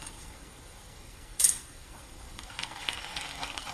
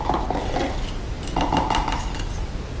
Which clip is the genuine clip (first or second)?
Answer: second